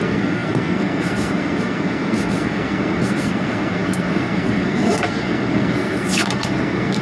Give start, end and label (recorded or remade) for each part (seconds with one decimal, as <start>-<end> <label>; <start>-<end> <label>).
0.0-7.0 remade